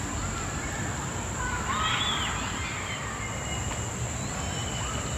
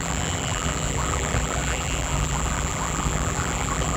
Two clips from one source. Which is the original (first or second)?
first